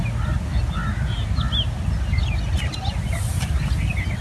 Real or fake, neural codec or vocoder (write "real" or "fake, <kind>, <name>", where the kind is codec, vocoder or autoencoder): real